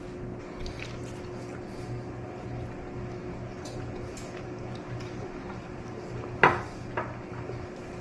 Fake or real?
real